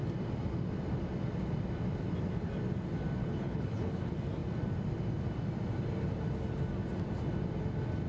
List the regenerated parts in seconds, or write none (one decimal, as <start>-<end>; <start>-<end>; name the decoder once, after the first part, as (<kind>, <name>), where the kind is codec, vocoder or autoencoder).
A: 3.2-4.0 (codec, HILCodec)